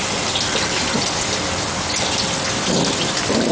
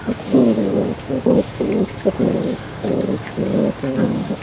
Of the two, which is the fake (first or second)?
second